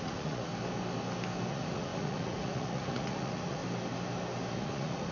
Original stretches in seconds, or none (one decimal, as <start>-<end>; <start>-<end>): 0.5-1.5; 3.6-4.5